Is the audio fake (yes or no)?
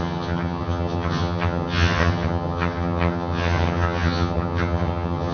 yes